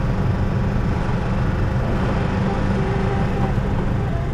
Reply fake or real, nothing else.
real